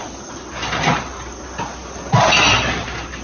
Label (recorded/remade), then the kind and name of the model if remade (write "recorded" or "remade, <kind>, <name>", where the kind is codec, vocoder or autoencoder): recorded